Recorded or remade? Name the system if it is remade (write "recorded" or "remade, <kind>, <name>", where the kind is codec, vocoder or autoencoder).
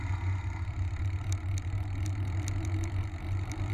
recorded